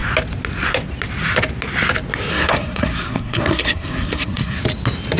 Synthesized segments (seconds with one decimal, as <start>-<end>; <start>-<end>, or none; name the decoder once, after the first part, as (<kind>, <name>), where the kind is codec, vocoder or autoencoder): 2.3-4.6 (codec, SNAC)